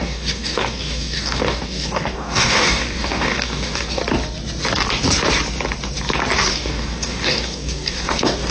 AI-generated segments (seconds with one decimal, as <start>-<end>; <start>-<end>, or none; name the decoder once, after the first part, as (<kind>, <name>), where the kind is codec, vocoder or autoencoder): 0.0-4.0 (codec, DAC); 6.5-8.5